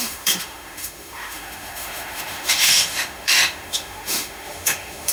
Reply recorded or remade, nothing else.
remade